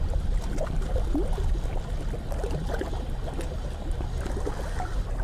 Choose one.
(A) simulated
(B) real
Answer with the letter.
B